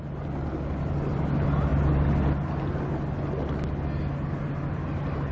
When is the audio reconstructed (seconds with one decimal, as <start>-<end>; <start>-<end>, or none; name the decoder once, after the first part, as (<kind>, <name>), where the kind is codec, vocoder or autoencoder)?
none